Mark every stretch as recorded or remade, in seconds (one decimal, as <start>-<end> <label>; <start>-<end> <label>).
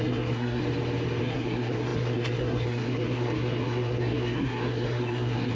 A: 0.0-0.6 remade; 0.6-1.2 recorded; 1.2-5.5 remade